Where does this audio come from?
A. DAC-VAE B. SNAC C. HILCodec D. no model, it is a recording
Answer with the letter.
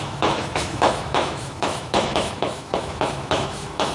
A